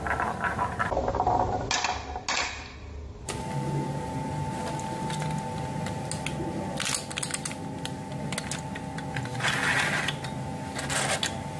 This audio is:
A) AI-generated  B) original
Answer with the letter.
B